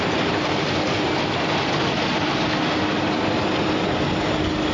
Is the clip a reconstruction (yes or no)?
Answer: no